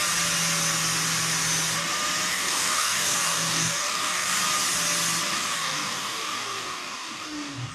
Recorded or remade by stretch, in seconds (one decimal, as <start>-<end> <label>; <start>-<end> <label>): 0.0-2.3 recorded; 2.3-4.4 remade; 4.4-5.3 recorded; 5.3-7.7 remade